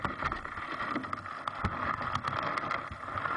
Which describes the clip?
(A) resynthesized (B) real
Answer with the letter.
B